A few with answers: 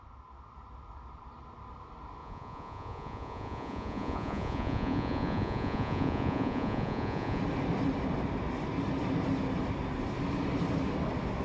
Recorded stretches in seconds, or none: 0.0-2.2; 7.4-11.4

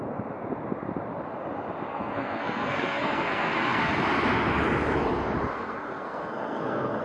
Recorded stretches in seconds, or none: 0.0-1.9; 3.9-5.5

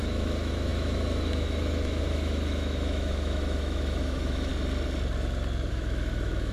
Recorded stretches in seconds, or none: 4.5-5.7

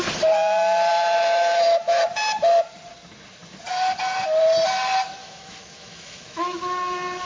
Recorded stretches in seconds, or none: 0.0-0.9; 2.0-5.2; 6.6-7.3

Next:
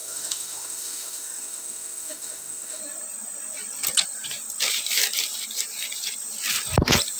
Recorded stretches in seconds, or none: 2.8-7.2

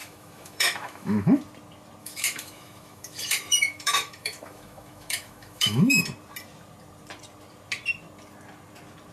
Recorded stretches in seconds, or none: 1.4-2.0; 6.0-9.1